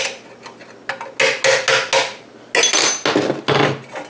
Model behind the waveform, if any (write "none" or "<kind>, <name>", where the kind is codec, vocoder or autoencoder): none